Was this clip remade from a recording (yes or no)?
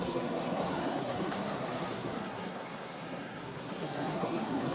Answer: yes